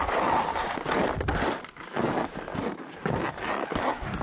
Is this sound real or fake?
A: real